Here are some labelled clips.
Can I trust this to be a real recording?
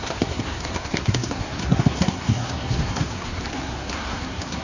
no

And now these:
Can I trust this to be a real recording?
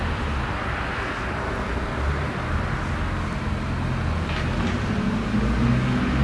yes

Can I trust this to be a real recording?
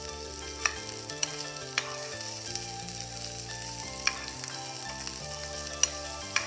yes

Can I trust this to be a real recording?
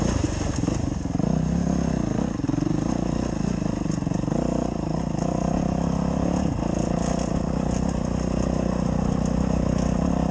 yes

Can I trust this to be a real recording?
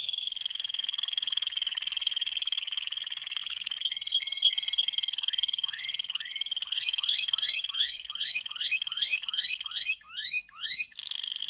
no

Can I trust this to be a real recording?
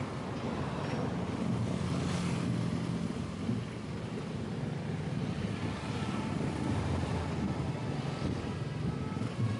yes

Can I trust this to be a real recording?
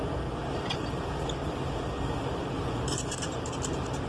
yes